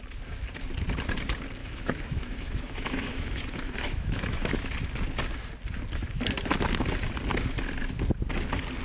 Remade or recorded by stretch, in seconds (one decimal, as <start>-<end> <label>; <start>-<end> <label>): 0.0-1.6 recorded; 1.6-4.7 remade; 4.7-8.8 recorded

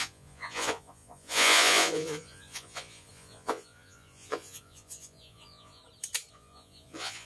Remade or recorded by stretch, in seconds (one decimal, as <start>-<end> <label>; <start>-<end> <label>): 0.0-5.8 remade; 5.8-6.3 recorded; 6.3-7.3 remade

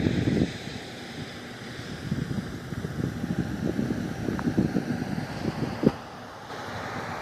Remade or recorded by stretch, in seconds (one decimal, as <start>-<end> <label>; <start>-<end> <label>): 0.0-7.2 recorded

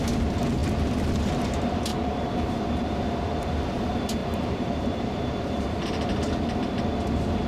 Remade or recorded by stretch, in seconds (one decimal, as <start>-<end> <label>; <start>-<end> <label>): 0.0-1.9 recorded; 1.9-3.3 remade; 3.3-4.2 recorded; 4.2-5.8 remade; 5.8-7.5 recorded

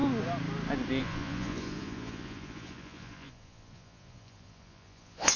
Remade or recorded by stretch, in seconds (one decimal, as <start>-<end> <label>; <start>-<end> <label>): 0.0-1.0 recorded; 1.0-5.4 remade